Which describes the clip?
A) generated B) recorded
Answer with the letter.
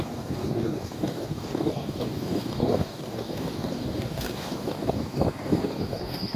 A